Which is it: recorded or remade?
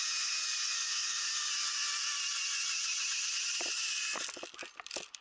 recorded